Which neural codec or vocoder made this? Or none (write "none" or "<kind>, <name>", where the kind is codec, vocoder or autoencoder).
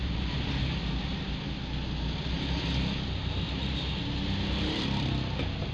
none